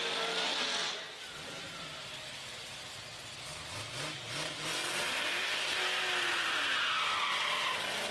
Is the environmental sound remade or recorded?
recorded